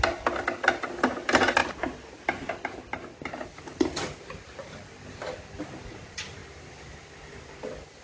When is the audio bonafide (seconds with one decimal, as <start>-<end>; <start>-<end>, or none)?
0.0-8.0